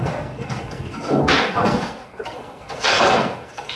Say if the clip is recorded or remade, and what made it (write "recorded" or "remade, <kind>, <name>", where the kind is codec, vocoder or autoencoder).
remade, codec, SNAC